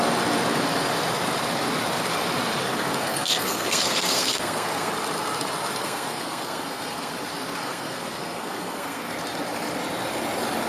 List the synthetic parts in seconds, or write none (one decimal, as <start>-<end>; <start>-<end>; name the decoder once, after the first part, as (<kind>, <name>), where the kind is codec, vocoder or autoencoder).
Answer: 2.7-4.9 (codec, SNAC); 5.8-7.1; 7.6-9.1